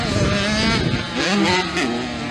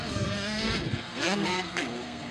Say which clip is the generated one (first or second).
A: second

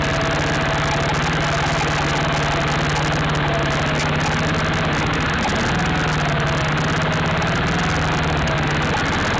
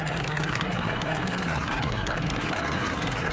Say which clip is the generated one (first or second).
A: second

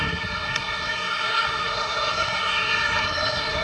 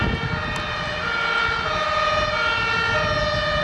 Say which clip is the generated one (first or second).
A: first